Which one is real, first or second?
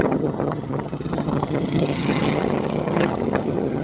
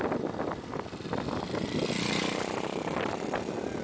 second